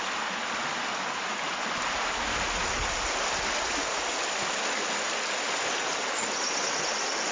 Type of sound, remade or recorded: recorded